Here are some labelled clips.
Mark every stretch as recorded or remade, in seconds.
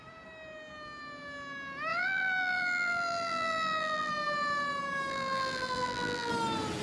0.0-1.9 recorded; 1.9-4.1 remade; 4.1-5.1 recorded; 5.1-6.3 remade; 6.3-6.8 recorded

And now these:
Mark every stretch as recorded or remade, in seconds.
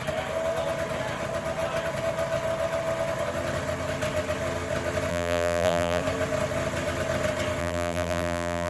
0.0-5.1 recorded; 5.1-6.0 remade; 6.0-7.6 recorded; 7.6-8.7 remade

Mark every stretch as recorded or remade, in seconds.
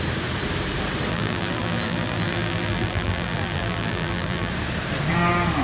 0.0-1.1 recorded; 1.1-4.5 remade; 4.5-5.6 recorded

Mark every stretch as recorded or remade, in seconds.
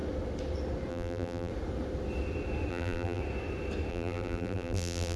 0.0-0.9 recorded; 0.9-1.5 remade; 1.5-2.7 recorded; 2.7-3.2 remade; 3.2-3.9 recorded; 3.9-5.2 remade